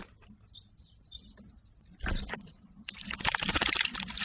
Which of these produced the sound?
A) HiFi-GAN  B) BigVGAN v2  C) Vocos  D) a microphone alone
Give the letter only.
D